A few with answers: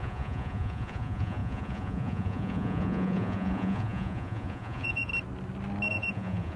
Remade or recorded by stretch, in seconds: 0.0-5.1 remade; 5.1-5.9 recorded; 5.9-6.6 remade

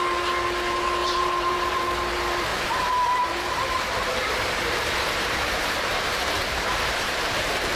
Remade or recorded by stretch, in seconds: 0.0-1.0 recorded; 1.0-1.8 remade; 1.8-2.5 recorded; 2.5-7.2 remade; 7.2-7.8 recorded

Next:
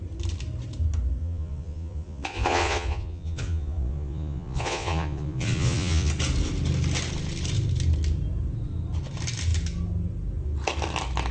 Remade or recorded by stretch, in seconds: 0.0-1.2 recorded; 1.2-6.1 remade; 6.1-11.3 recorded

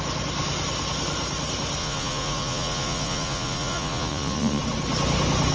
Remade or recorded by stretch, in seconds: 0.0-1.8 recorded; 1.8-4.6 remade; 4.6-5.5 recorded

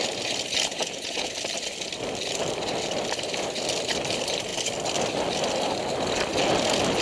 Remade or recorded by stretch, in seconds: 0.0-0.7 recorded; 0.7-1.3 remade; 1.3-7.0 recorded

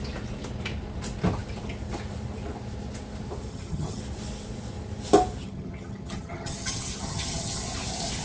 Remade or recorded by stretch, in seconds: 0.0-3.5 recorded; 3.5-4.0 remade; 4.0-5.4 recorded; 5.4-7.6 remade; 7.6-8.2 recorded